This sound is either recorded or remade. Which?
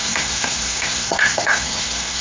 remade